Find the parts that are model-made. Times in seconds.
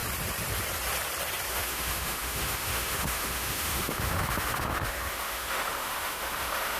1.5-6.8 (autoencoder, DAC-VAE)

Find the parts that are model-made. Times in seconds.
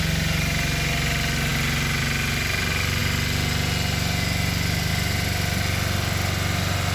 none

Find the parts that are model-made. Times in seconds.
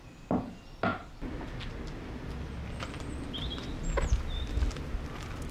none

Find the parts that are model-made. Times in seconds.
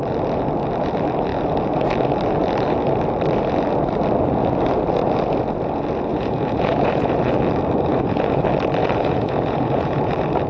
6.1-7.3 (vocoder, Vocos); 7.9-8.4; 8.8-10.1